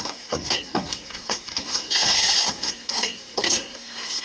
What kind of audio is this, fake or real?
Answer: fake